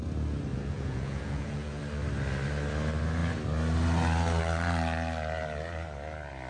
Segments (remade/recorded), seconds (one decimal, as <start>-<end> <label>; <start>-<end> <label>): 0.0-0.5 recorded; 0.5-1.8 remade; 1.8-6.5 recorded